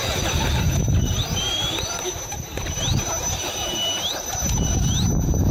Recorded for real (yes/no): yes